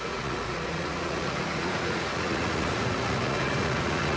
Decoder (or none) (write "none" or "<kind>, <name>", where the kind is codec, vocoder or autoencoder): vocoder, Vocos